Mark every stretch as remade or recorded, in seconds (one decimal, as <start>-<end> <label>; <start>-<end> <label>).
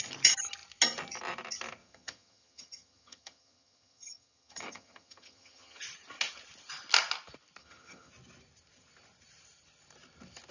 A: 0.0-1.8 recorded; 1.8-5.8 remade; 5.8-7.6 recorded; 7.6-8.1 remade; 8.1-10.5 recorded